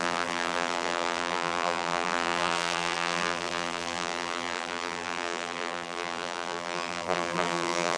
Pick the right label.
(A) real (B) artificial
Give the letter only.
B